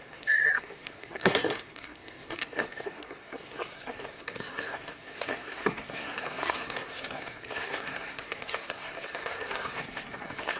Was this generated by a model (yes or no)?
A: yes